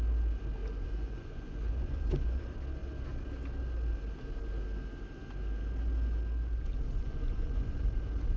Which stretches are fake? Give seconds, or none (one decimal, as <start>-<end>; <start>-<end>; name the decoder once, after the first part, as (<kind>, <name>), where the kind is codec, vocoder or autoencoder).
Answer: 0.6-2.4 (vocoder, Vocos); 7.0-7.8